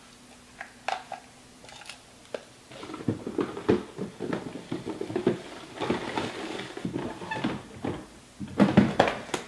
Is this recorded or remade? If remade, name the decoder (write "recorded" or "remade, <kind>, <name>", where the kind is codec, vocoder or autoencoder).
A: recorded